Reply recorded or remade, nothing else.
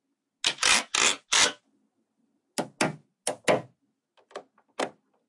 recorded